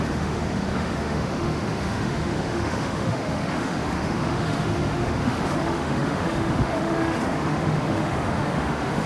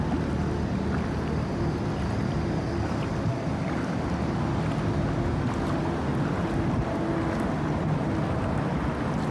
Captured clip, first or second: second